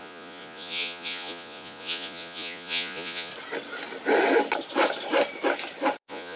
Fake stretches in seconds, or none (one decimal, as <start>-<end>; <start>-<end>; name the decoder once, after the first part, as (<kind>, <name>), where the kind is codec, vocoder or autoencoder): 0.0-3.3 (vocoder, Vocos); 6.0-6.4